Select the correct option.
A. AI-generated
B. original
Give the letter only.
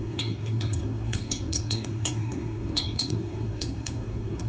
A